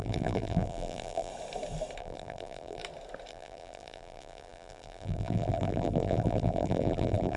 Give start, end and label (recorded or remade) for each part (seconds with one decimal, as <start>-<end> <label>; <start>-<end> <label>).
0.0-1.3 remade; 1.3-2.0 recorded; 2.0-2.8 remade; 2.8-3.3 recorded; 3.3-7.4 remade